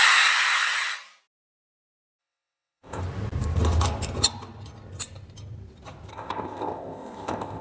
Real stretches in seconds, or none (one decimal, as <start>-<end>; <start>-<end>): 0.0-2.2; 3.0-6.1